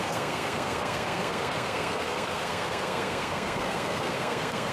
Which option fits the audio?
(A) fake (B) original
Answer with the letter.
A